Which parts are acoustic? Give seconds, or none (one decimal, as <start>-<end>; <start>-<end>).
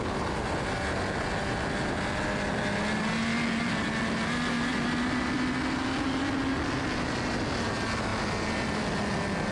0.0-9.5